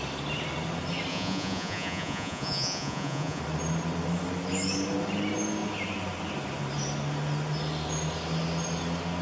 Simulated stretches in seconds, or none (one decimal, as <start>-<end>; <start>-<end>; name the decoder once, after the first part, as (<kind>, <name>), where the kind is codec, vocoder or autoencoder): 1.1-3.4 (vocoder, Vocos)